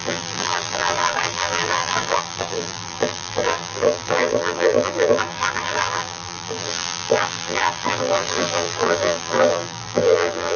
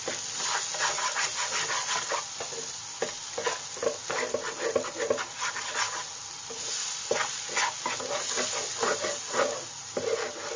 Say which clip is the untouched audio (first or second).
second